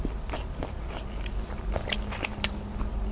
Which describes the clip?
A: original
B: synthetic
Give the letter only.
A